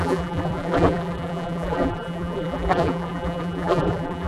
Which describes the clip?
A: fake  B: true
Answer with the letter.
A